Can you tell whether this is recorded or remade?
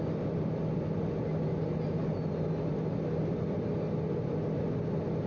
recorded